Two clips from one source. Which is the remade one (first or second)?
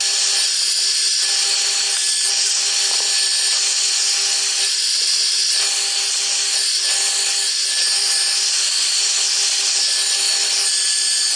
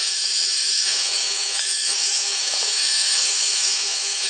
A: second